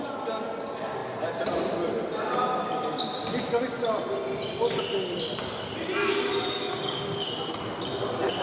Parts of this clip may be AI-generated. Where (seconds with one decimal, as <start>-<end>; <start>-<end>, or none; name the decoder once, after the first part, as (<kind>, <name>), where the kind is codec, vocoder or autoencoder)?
6.0-7.3 (codec, DAC)